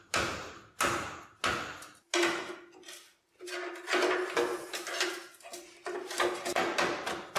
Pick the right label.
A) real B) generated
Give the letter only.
A